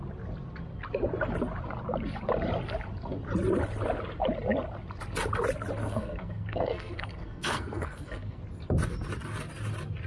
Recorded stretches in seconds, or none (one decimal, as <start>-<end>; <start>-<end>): 0.0-5.8; 8.4-10.1